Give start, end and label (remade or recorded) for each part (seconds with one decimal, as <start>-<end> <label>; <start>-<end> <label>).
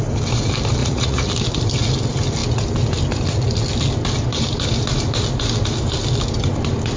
0.0-0.8 recorded; 0.8-1.3 remade; 1.3-7.0 recorded